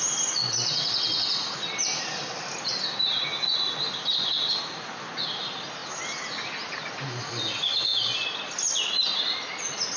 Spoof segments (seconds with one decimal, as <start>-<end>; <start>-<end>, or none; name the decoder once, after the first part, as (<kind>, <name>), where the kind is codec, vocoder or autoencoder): none